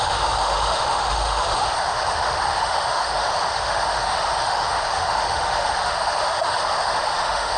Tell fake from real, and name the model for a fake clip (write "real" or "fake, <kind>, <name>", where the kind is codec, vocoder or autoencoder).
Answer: fake, autoencoder, DAC-VAE